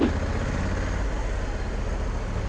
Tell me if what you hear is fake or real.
real